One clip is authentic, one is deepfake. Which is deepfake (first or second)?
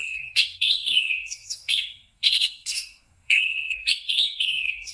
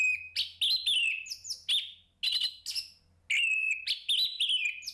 first